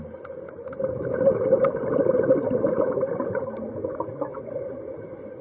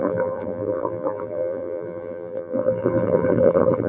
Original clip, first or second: first